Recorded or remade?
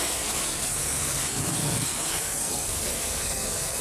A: remade